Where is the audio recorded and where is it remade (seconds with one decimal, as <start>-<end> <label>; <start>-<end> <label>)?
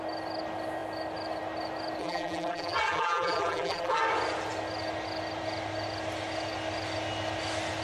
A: 0.0-2.0 recorded; 2.0-4.0 remade; 4.0-7.8 recorded